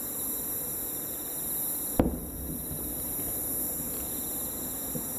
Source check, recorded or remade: recorded